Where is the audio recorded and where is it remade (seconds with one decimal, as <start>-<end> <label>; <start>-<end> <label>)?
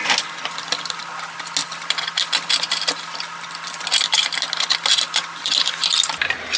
0.0-6.6 recorded